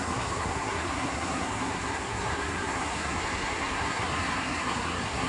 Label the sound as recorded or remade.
remade